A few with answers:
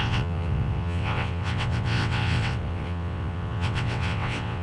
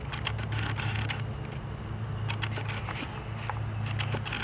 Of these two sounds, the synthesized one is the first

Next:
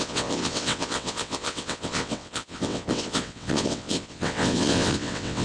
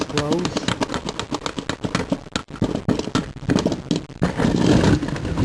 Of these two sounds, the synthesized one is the first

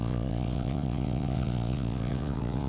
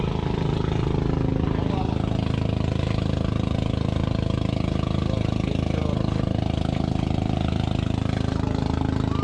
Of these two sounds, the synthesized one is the first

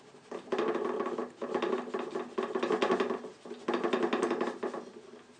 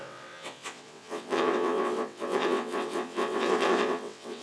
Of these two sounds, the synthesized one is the second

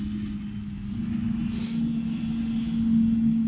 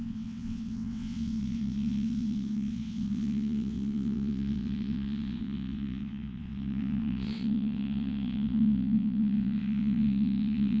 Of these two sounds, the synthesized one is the second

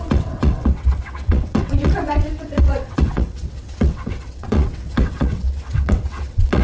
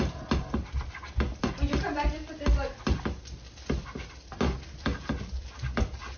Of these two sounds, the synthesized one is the first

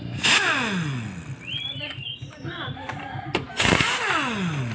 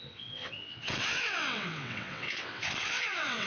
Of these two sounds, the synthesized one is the second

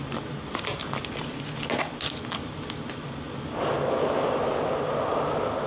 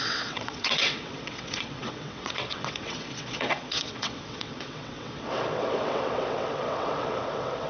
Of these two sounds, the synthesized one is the second